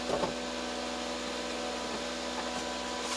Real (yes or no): yes